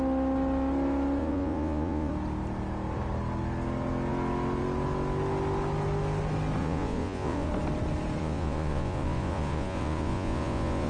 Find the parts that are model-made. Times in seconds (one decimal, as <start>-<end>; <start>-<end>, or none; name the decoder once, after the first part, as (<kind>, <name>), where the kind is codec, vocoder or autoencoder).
1.2-2.1 (vocoder, Vocos); 6.6-7.5; 8.2-10.9

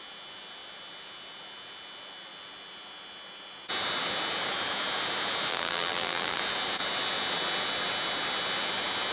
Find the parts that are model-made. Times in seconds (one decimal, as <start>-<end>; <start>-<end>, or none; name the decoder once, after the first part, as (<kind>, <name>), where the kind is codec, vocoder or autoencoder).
5.5-6.4 (vocoder, BigVGAN v2)

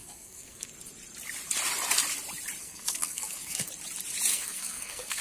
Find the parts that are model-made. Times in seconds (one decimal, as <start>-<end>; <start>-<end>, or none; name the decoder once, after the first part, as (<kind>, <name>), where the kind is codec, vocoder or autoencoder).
0.0-0.7 (codec, SNAC); 2.6-3.7; 4.3-5.2

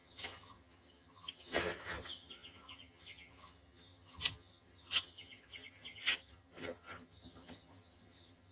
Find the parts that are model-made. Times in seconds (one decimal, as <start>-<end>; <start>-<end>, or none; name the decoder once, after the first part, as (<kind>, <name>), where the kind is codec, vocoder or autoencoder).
0.0-8.5 (vocoder, HiFi-GAN)

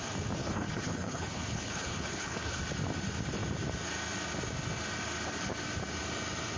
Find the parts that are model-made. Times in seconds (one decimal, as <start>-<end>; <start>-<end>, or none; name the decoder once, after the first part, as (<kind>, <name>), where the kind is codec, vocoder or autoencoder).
0.4-2.6 (codec, HILCodec)

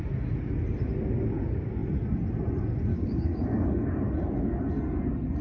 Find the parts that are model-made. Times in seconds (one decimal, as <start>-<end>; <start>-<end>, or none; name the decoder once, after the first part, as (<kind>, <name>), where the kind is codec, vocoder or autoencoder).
2.9-4.0 (codec, DAC)

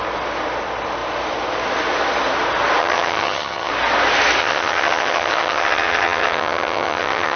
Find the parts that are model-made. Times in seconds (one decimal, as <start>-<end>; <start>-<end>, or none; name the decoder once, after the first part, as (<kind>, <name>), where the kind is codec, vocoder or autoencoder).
2.8-3.7 (vocoder, HiFi-GAN); 4.4-7.4